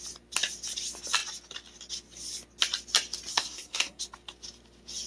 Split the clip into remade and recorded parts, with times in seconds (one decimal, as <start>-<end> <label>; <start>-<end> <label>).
0.0-3.3 recorded; 3.3-4.0 remade; 4.0-5.1 recorded